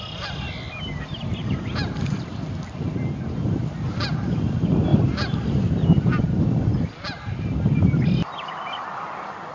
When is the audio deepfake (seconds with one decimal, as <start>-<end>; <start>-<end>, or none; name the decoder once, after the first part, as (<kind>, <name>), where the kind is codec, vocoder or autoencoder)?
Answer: 1.4-2.3 (vocoder, BigVGAN v2); 4.9-5.6